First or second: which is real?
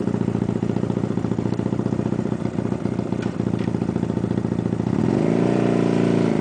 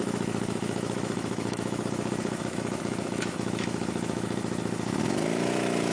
first